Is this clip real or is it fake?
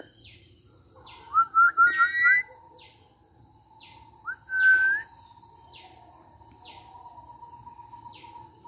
real